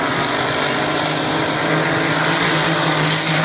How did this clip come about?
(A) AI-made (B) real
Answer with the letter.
B